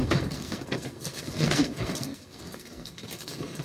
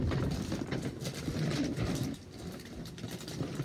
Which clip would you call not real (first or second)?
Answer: first